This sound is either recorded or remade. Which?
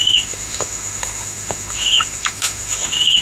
remade